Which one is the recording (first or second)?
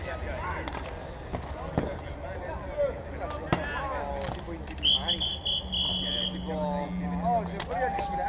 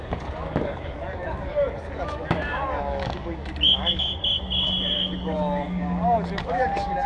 first